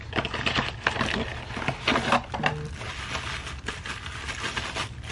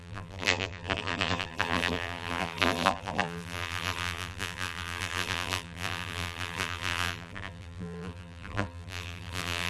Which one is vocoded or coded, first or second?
second